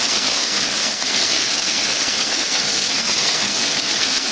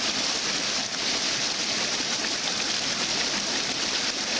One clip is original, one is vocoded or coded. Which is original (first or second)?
second